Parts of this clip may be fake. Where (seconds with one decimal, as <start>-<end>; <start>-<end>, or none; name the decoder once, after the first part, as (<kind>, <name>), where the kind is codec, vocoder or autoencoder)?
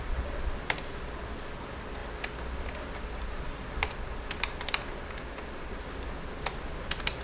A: none